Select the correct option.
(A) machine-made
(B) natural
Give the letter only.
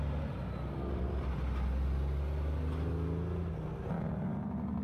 B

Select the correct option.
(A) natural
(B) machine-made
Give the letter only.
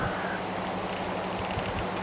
A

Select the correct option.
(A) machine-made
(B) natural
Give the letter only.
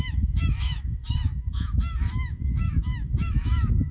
A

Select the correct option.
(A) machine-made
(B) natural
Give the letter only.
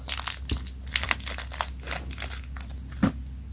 B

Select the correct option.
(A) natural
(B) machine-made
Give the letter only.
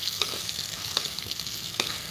B